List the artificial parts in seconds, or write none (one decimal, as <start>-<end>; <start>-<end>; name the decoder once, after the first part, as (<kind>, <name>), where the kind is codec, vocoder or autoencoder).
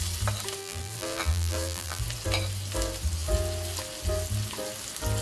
0.6-2.0 (vocoder, BigVGAN v2)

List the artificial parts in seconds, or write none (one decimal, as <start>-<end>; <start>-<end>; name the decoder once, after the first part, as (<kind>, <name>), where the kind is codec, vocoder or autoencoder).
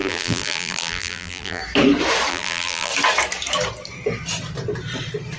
0.0-1.6 (vocoder, BigVGAN v2); 2.3-2.9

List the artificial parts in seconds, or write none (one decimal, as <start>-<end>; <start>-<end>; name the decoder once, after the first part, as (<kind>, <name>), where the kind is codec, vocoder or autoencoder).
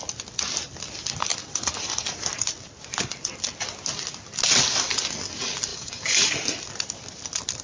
5.7-6.3 (vocoder, BigVGAN v2)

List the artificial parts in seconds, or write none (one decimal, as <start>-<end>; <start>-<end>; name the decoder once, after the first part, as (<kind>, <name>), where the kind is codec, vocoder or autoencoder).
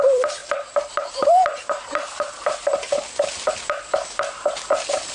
none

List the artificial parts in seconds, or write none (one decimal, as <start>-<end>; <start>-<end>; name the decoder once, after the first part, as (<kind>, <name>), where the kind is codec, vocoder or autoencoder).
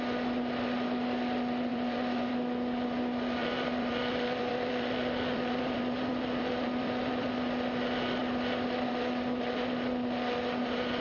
1.7-2.3 (vocoder, BigVGAN v2); 3.4-7.3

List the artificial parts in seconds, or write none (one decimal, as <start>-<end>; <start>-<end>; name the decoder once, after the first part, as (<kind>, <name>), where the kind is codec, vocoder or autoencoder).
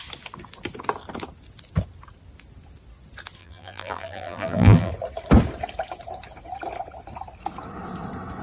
3.4-4.9 (vocoder, BigVGAN v2)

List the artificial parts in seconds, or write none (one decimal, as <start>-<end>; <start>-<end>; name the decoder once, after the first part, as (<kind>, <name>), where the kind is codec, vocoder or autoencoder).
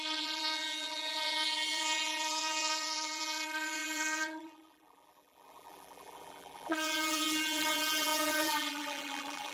0.0-9.5 (vocoder, BigVGAN v2)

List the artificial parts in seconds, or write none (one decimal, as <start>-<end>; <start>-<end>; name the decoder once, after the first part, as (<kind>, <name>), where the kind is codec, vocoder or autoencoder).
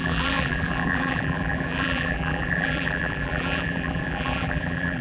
0.0-5.0 (vocoder, BigVGAN v2)